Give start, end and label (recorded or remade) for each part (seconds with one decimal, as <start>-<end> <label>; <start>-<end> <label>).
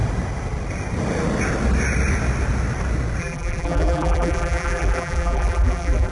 0.0-3.2 recorded; 3.2-6.1 remade